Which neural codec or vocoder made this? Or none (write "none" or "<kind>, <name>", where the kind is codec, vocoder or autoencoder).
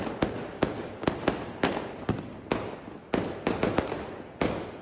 none